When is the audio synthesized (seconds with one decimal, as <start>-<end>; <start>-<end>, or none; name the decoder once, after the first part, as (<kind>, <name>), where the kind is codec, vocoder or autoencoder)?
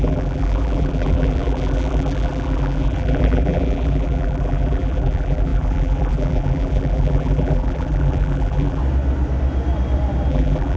0.0-8.8 (vocoder, BigVGAN v2); 10.3-10.8